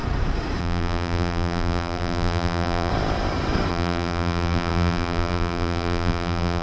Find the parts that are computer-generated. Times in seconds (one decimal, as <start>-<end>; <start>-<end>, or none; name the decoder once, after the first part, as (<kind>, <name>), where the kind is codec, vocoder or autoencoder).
0.6-2.9 (vocoder, BigVGAN v2); 3.7-6.6